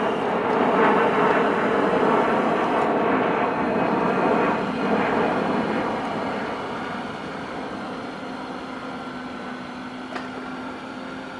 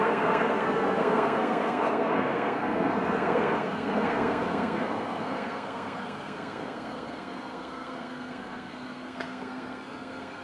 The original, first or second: first